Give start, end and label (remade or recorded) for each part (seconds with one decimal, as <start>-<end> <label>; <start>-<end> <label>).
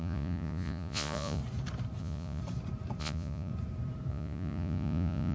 0.0-1.4 remade; 1.4-2.0 recorded; 2.0-2.4 remade; 2.4-3.0 recorded; 3.0-3.5 remade; 3.5-4.1 recorded; 4.1-5.3 remade